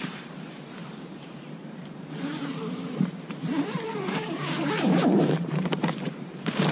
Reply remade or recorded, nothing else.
remade